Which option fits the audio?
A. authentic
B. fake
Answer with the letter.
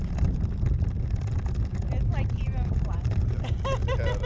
A